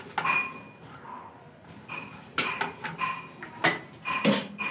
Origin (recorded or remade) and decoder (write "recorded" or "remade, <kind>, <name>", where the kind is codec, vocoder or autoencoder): recorded